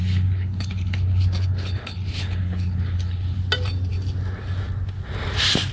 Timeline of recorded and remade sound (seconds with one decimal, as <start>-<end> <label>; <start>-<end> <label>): 0.0-3.4 remade; 3.4-5.7 recorded